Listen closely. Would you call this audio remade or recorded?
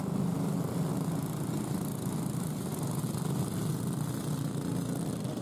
recorded